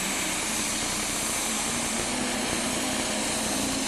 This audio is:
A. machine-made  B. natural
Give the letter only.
B